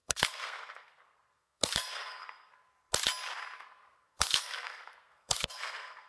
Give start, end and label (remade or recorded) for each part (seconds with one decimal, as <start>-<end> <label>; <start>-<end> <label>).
0.0-2.7 remade; 2.7-3.6 recorded; 3.6-6.1 remade